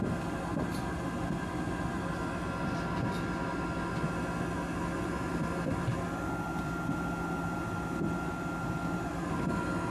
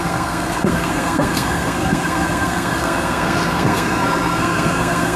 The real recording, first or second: first